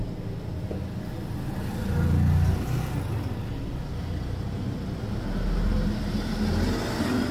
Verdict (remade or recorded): recorded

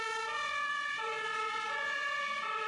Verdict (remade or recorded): remade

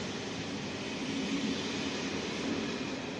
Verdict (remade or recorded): recorded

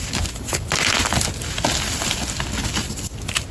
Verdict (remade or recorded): recorded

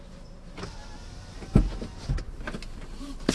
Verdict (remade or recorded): recorded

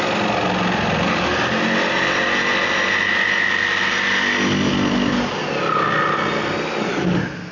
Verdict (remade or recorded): recorded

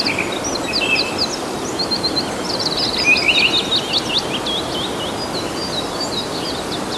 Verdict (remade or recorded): recorded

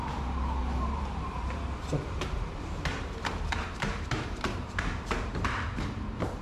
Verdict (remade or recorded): remade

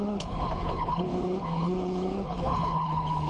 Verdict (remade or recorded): remade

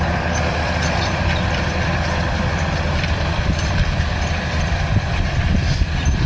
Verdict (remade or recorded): remade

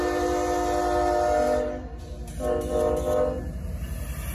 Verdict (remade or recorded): recorded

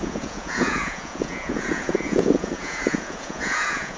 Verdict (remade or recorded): remade